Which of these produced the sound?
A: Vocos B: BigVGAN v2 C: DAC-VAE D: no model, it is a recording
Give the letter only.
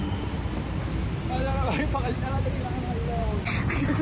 D